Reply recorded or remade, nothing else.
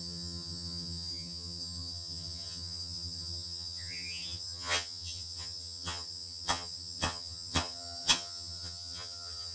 remade